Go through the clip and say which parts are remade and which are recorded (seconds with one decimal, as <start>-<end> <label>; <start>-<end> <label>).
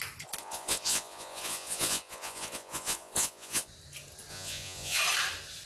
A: 0.0-0.4 recorded; 0.4-3.7 remade; 3.7-4.3 recorded; 4.3-5.0 remade; 5.0-5.7 recorded